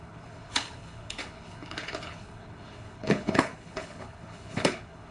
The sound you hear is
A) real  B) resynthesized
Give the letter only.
B